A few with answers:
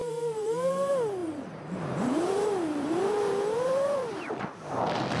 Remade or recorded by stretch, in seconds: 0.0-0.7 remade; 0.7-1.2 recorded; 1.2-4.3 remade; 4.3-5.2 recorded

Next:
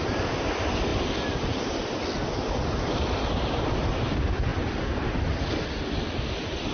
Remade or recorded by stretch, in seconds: 0.0-6.7 recorded

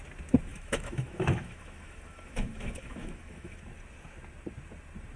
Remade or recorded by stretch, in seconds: 0.0-0.5 recorded; 0.5-3.6 remade; 3.6-5.2 recorded

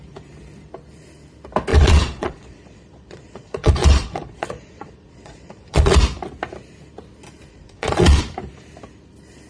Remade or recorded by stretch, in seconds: 0.0-1.7 recorded; 1.7-6.0 remade; 6.0-7.5 recorded; 7.5-8.2 remade; 8.2-9.5 recorded